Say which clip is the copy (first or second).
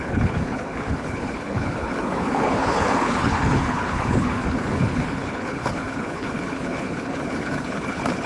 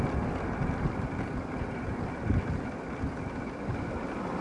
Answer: first